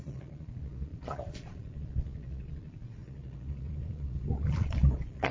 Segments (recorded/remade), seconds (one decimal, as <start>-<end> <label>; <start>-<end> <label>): 0.0-5.3 remade